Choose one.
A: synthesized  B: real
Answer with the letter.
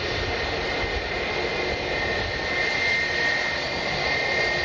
B